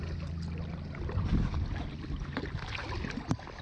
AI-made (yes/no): no